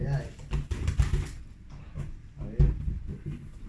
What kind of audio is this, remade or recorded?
recorded